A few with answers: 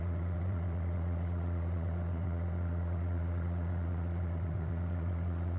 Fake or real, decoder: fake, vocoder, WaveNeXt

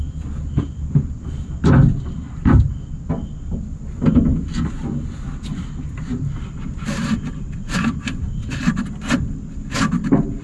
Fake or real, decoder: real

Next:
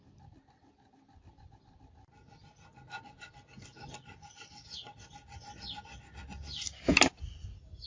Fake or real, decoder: real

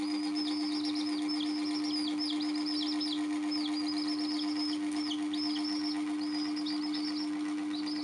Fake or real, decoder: real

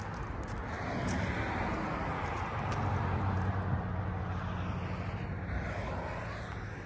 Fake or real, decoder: real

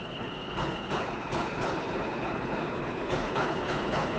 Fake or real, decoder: fake, codec, HILCodec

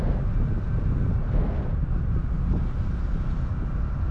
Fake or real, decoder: real